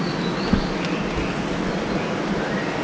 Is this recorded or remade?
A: recorded